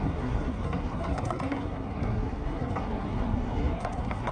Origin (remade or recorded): remade